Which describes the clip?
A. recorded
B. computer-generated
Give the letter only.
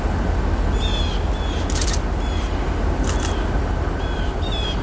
A